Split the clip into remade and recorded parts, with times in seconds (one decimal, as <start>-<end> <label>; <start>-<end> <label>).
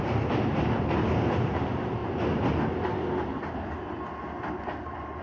0.0-5.2 recorded